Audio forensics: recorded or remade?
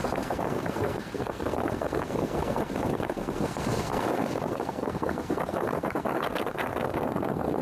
remade